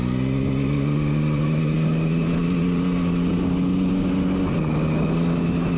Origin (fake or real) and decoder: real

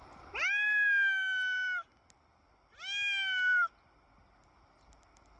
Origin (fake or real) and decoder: real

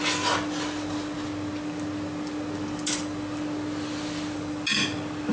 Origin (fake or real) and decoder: real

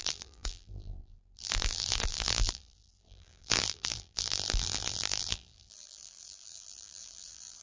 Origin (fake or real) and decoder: fake, vocoder, BigVGAN v2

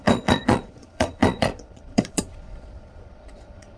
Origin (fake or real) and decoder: fake, vocoder, Vocos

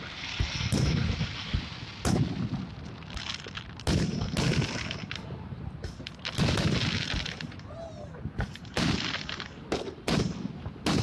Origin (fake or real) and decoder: real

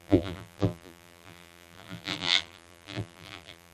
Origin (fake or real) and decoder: fake, vocoder, BigVGAN v2